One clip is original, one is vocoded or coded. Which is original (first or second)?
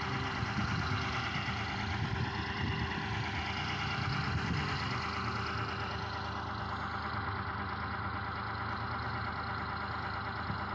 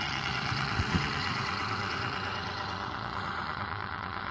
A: first